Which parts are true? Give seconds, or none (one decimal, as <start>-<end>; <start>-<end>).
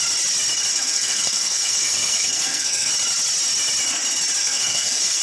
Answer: 0.0-0.7; 2.9-4.4